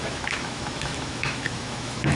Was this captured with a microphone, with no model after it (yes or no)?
no